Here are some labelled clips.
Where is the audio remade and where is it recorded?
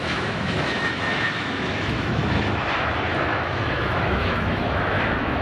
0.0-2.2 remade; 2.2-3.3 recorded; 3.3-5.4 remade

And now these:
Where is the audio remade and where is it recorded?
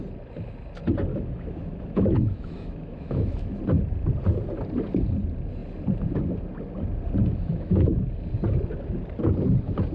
0.0-1.1 recorded; 1.1-3.6 remade; 3.6-7.2 recorded; 7.2-8.1 remade; 8.1-9.9 recorded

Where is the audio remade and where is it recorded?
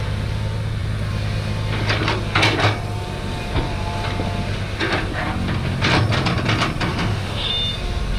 0.0-6.9 recorded; 6.9-7.5 remade; 7.5-8.2 recorded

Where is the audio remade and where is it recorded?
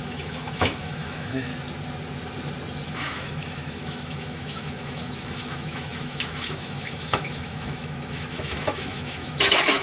0.0-1.5 remade; 1.5-2.9 recorded; 2.9-9.8 remade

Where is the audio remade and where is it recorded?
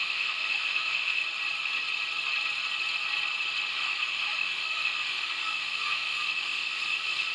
0.0-1.2 remade; 1.2-3.7 recorded; 3.7-7.3 remade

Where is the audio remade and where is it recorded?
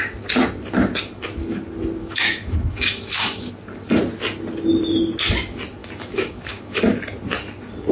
0.0-2.0 recorded; 2.0-3.5 remade; 3.5-5.8 recorded; 5.8-6.8 remade; 6.8-7.9 recorded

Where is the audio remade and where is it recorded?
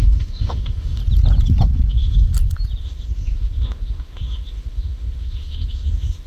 0.0-1.0 remade; 1.0-1.9 recorded; 1.9-2.3 remade; 2.3-2.8 recorded; 2.8-6.3 remade